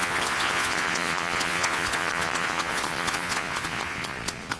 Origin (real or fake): fake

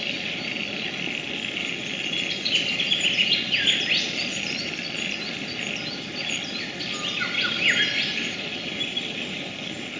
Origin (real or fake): real